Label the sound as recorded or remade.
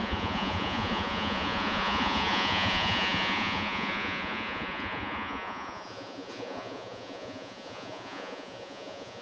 remade